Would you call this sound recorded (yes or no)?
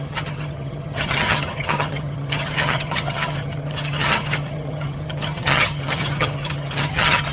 no